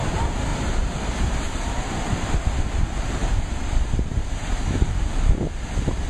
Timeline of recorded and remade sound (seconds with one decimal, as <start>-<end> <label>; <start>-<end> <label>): 0.0-0.5 recorded; 0.5-2.5 remade; 2.5-3.2 recorded; 3.2-5.0 remade; 5.0-6.1 recorded